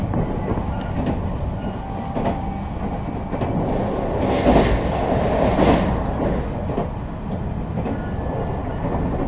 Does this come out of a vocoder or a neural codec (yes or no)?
no